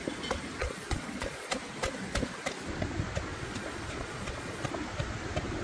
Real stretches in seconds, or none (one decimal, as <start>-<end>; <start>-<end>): 0.0-0.6; 1.5-3.3; 4.7-5.6